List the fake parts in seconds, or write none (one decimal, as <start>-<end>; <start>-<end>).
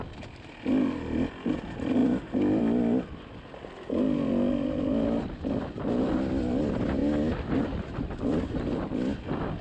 none